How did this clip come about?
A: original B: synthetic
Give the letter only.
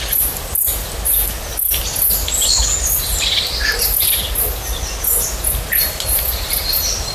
A